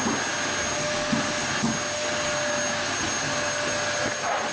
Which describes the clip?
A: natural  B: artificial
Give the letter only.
A